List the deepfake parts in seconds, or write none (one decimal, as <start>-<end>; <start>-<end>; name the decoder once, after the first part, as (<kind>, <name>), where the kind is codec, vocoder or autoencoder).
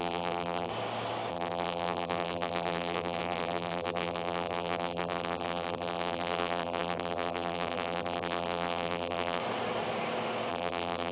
0.0-0.7 (vocoder, BigVGAN v2); 1.3-9.4; 10.5-11.1